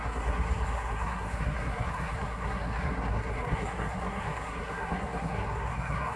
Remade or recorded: remade